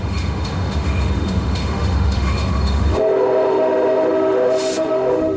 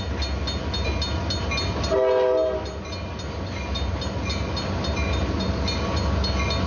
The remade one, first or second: first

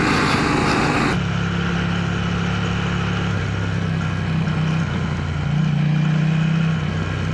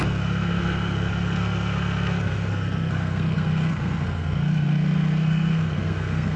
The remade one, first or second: second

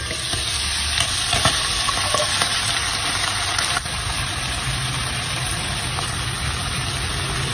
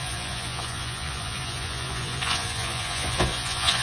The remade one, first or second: second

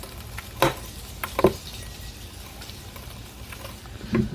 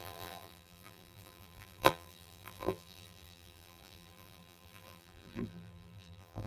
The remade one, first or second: second